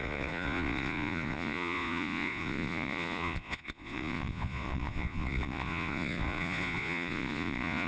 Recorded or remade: remade